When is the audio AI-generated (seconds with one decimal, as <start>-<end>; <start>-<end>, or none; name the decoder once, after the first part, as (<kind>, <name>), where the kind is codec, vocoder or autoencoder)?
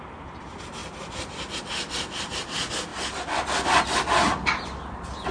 none